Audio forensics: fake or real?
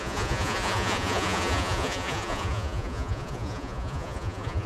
fake